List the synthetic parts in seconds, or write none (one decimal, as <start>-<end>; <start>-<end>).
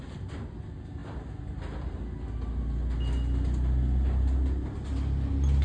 none